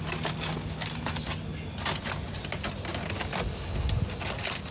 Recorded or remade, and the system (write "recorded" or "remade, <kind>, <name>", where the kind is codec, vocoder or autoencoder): recorded